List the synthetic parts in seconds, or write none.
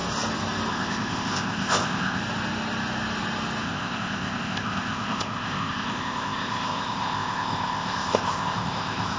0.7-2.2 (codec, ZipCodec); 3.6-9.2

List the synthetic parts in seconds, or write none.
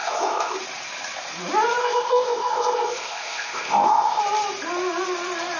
0.0-0.6 (codec, ZipCodec); 1.8-4.2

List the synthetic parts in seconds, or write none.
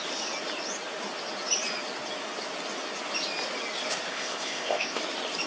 4.1-5.0 (codec, ZipCodec)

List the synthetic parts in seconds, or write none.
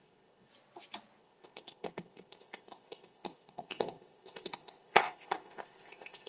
0.0-0.5 (codec, ZipCodec); 1.2-6.3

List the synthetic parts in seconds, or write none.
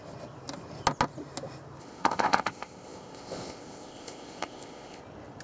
1.8-5.0 (codec, ZipCodec)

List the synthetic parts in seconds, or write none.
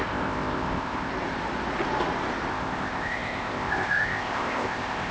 0.0-1.1 (codec, ZipCodec); 2.5-5.1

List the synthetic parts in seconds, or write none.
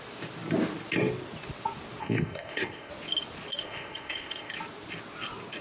2.0-2.9 (codec, ZipCodec); 3.6-4.5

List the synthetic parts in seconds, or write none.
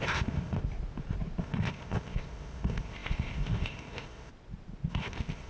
0.0-0.6 (codec, ZipCodec); 1.4-4.3; 4.9-5.5